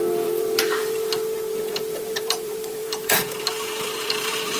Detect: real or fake fake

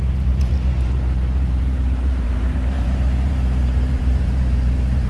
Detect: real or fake fake